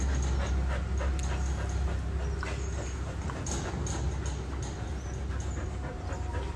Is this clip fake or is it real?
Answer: real